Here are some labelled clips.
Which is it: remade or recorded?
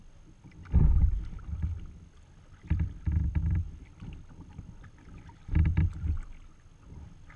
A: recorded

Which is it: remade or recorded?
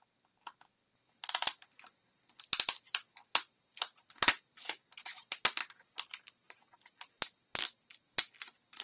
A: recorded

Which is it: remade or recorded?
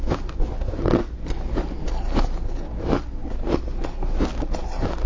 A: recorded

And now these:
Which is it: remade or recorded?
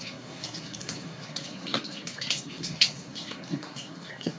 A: remade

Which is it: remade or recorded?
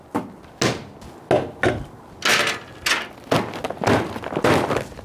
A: recorded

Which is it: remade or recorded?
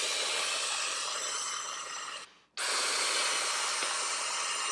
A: recorded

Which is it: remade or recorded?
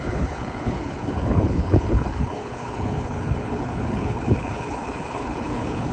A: remade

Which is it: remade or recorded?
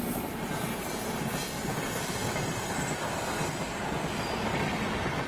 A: recorded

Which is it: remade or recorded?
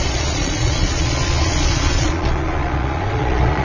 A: remade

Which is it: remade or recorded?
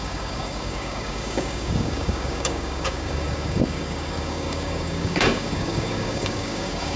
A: remade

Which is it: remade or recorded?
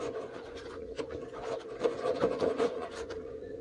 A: remade